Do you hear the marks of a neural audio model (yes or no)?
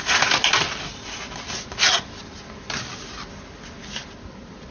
no